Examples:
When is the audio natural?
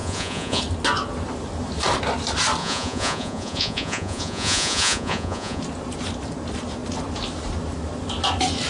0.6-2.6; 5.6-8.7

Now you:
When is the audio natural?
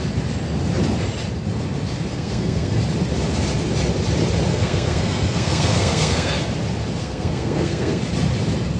0.0-2.1; 2.8-4.5; 6.4-7.0; 8.0-8.8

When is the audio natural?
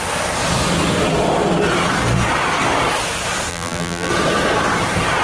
0.0-3.5; 4.1-5.2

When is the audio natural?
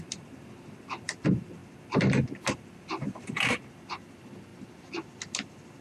1.6-2.5; 4.5-5.8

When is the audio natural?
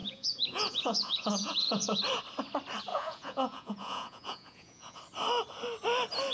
2.0-2.9; 5.0-6.3